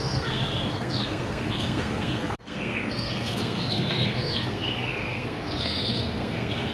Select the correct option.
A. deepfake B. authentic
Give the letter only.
A